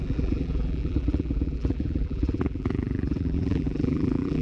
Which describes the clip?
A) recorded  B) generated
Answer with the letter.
B